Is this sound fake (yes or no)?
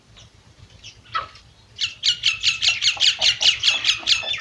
yes